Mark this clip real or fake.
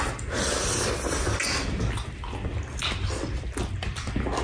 real